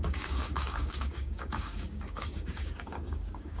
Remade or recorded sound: remade